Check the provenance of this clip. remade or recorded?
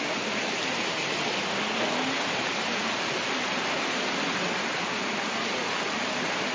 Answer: recorded